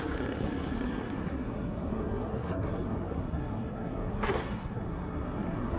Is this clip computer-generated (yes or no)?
yes